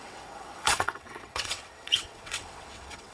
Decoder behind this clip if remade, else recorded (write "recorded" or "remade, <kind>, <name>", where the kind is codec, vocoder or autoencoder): remade, vocoder, WaveNeXt